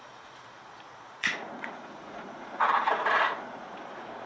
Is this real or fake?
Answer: fake